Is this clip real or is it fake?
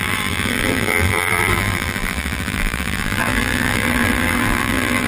fake